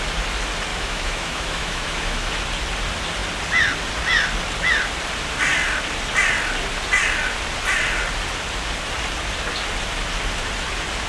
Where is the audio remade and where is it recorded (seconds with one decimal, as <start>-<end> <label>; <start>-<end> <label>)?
0.0-0.7 recorded; 0.7-2.3 remade; 2.3-11.1 recorded